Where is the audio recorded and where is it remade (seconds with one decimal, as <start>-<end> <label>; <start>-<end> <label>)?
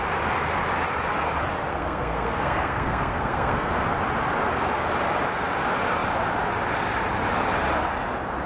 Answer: 0.0-1.7 recorded; 1.7-3.7 remade; 3.7-8.5 recorded